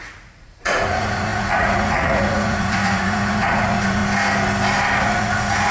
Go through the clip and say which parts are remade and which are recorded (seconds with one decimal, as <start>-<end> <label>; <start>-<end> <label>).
0.0-4.0 remade; 4.0-5.0 recorded; 5.0-5.7 remade